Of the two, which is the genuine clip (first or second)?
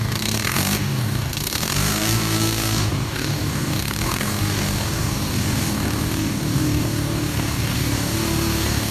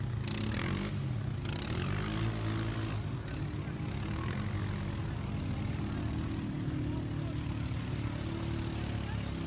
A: second